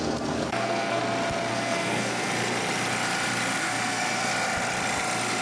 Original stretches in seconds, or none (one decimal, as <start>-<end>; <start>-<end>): 1.0-1.5; 2.3-3.6; 4.3-5.4